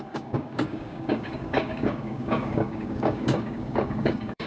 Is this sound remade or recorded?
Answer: remade